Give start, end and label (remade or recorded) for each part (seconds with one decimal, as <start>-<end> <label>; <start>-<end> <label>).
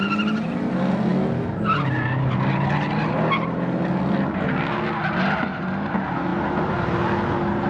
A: 0.0-7.7 recorded